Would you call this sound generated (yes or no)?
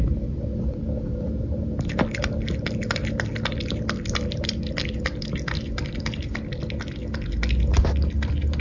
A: no